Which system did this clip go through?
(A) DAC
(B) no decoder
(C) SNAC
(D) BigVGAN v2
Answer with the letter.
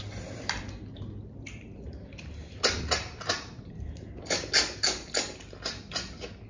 B